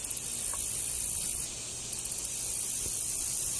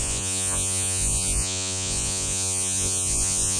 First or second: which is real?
first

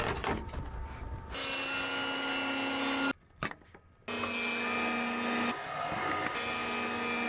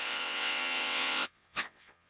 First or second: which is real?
first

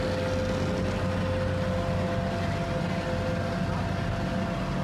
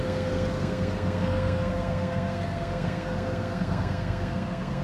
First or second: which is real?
first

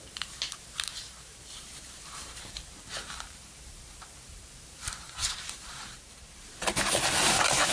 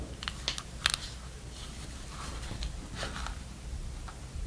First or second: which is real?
second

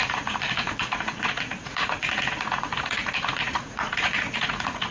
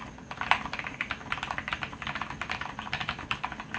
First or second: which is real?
second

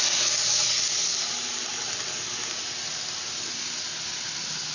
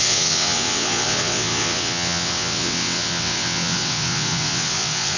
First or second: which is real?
first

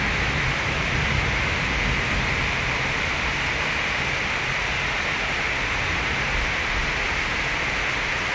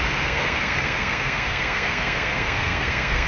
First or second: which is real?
first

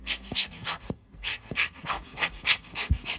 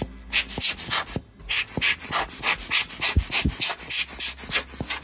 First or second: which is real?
second